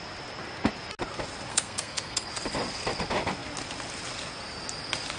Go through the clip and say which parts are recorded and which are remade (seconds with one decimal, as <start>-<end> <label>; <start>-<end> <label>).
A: 0.0-1.5 recorded; 1.5-2.3 remade; 2.3-5.2 recorded